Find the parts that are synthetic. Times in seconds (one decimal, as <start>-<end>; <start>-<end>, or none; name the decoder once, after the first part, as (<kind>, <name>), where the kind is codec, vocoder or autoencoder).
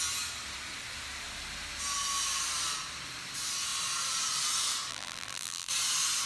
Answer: 4.9-5.7 (vocoder, BigVGAN v2)